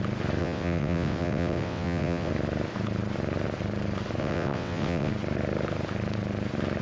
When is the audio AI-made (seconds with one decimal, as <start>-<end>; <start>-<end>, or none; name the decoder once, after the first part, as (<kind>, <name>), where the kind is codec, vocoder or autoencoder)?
0.4-2.3 (vocoder, WaveNeXt); 4.2-5.1